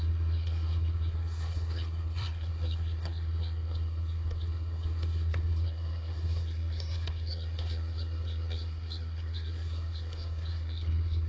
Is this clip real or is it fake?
fake